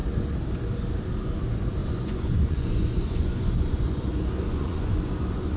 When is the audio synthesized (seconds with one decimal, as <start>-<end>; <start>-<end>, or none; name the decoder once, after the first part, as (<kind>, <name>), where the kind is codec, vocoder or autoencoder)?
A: 1.8-5.6 (vocoder, Vocos)